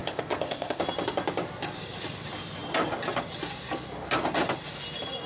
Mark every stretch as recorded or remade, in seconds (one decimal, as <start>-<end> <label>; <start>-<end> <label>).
0.0-0.8 remade; 0.8-5.3 recorded